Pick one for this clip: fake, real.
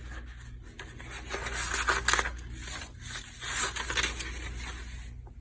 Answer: real